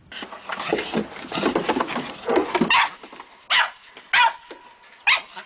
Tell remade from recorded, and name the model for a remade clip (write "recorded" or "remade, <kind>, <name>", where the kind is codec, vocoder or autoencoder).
recorded